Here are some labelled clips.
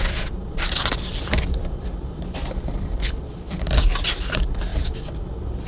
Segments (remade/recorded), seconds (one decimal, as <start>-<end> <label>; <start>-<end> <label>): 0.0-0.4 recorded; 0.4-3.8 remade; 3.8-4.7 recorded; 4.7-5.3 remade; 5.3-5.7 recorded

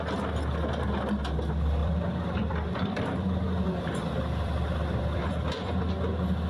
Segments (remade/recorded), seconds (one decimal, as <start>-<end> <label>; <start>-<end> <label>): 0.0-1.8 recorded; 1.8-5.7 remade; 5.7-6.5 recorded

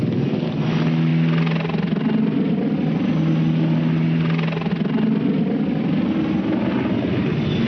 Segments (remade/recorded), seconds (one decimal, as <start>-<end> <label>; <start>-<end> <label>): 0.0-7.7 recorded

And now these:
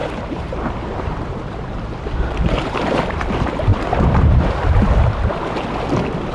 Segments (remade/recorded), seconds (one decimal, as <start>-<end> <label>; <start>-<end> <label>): 0.0-3.0 remade; 3.0-3.7 recorded; 3.7-4.8 remade; 4.8-6.3 recorded

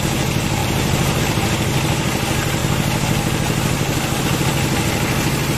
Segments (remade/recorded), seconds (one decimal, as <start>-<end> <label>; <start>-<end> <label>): 0.0-0.6 recorded; 0.6-1.2 remade; 1.2-5.6 recorded